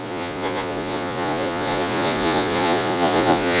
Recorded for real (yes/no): no